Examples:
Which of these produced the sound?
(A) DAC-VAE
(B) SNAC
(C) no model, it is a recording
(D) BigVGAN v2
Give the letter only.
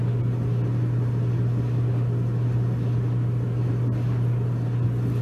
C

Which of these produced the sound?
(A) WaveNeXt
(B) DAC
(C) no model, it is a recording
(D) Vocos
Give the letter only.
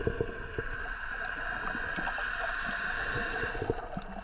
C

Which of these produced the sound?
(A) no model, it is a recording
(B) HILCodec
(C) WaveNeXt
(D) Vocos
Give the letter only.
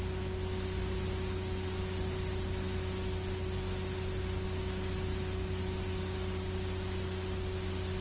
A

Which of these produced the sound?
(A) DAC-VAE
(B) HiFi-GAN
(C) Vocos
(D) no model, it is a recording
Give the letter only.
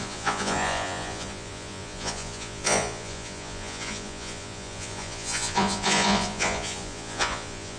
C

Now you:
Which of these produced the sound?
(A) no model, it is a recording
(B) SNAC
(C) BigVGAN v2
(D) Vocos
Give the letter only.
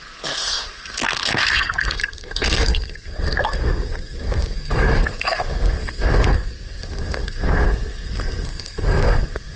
B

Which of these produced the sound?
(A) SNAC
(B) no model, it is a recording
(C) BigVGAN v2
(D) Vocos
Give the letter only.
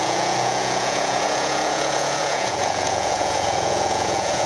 D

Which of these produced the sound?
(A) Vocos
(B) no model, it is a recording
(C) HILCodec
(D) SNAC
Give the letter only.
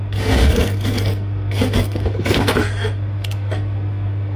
D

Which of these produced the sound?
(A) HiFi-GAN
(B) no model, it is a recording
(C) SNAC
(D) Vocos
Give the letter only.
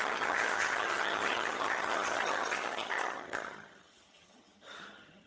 A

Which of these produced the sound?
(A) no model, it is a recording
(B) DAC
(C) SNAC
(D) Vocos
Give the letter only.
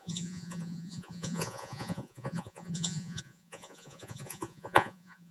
D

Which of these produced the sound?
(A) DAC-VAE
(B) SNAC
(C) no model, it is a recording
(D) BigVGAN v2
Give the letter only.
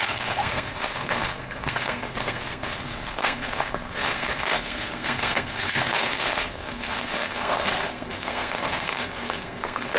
B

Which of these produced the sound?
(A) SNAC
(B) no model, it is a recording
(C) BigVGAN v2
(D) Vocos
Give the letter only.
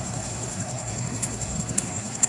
A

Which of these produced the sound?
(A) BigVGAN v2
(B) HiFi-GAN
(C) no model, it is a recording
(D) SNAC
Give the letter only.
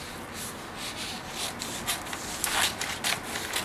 C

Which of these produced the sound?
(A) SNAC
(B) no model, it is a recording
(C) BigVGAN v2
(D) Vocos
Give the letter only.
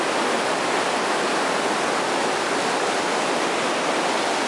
B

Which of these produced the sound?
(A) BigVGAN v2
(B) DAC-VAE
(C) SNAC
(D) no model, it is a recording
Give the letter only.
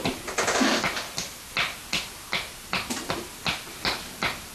D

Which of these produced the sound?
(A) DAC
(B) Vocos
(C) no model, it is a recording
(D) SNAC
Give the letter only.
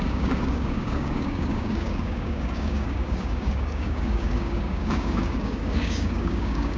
A